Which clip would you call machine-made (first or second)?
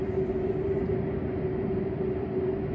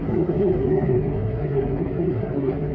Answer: second